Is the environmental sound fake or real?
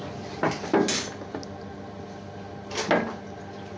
real